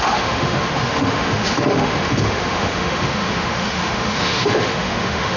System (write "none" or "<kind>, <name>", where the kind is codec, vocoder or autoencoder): autoencoder, DAC-VAE